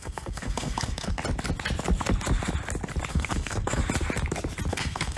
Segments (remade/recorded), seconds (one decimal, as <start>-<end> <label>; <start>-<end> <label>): 0.0-1.2 remade; 1.2-3.1 recorded; 3.1-3.8 remade; 3.8-4.7 recorded; 4.7-5.2 remade